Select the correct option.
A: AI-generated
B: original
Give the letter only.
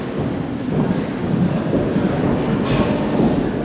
B